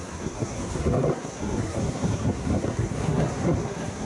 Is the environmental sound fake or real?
fake